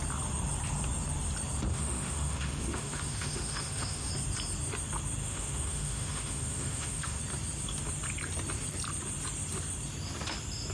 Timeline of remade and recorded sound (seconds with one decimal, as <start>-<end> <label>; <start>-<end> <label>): 0.0-1.7 recorded; 1.7-4.1 remade; 4.1-5.2 recorded; 5.2-7.2 remade; 7.2-10.7 recorded